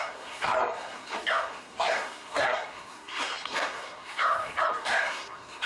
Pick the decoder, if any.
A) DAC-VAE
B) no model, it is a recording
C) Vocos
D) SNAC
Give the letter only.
D